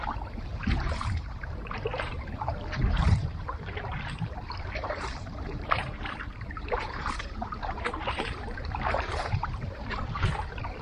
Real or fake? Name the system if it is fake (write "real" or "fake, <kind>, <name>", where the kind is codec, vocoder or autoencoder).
fake, vocoder, BigVGAN v2